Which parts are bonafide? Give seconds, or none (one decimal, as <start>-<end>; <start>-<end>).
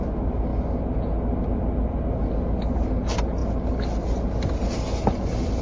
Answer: 0.0-5.6